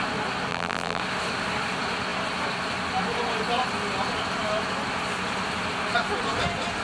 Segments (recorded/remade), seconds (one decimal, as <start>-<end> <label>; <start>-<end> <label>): 0.0-0.5 recorded; 0.5-1.0 remade; 1.0-6.8 recorded